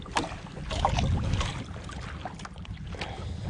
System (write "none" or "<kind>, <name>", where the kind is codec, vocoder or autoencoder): none